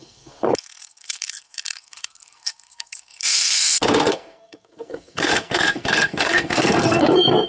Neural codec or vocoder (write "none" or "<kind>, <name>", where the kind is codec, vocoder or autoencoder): codec, SNAC